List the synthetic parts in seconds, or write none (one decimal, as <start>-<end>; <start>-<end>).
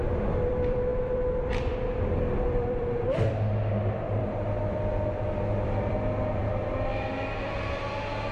0.0-6.4